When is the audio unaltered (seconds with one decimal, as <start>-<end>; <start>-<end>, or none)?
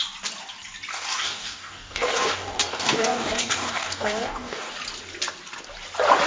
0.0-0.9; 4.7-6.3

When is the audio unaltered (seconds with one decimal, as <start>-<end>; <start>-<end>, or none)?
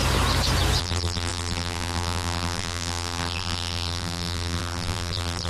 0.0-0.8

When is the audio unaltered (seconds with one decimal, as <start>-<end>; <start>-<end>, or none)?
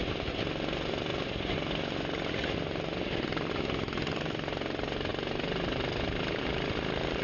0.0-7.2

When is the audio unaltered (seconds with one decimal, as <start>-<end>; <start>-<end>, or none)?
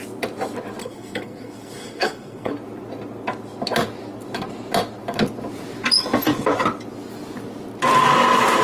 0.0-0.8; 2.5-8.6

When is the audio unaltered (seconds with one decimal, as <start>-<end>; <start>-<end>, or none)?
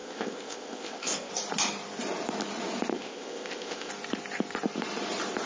1.3-2.9; 3.9-5.5